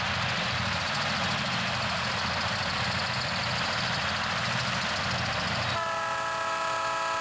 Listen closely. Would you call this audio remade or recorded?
recorded